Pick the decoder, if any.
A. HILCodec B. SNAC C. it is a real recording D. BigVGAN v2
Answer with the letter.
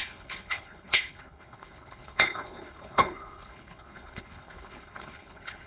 A